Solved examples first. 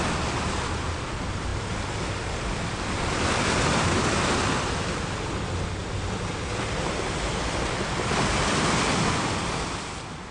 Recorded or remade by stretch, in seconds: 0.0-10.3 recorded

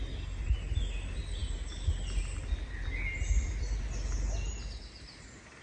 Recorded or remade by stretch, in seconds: 0.0-5.6 recorded